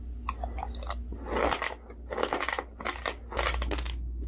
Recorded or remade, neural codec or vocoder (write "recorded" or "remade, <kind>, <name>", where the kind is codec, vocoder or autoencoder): recorded